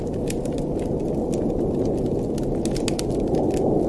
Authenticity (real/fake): real